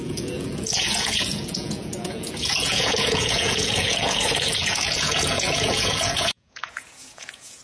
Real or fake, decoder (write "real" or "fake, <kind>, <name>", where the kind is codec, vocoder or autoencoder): fake, vocoder, Vocos